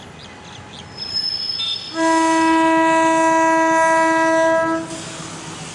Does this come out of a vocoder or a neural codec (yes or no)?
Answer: no